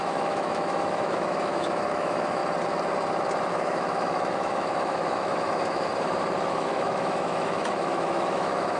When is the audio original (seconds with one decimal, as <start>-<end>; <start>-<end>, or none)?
2.4-3.5; 5.9-6.5